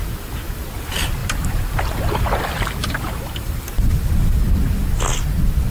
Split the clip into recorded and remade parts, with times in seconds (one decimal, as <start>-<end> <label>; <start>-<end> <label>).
0.0-1.2 recorded; 1.2-2.4 remade; 2.4-2.8 recorded; 2.8-3.5 remade; 3.5-5.7 recorded